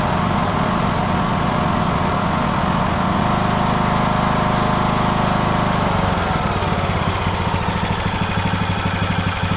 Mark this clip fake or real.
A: real